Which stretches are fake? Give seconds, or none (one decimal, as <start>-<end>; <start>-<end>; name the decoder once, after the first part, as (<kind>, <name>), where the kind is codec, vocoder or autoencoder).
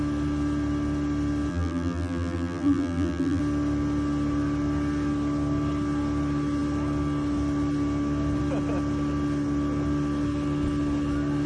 1.5-3.4 (vocoder, BigVGAN v2)